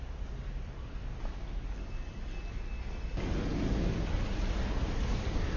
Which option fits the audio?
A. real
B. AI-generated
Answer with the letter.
A